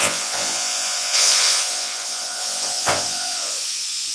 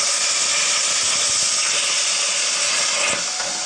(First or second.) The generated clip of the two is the first